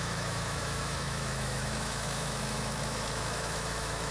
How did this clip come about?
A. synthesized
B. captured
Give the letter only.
A